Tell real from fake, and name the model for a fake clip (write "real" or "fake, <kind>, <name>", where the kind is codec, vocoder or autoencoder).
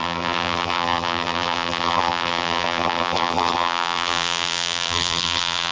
fake, vocoder, BigVGAN v2